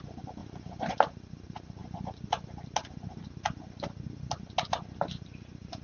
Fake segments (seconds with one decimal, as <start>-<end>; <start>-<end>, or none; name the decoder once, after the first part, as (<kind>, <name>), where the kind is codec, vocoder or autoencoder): none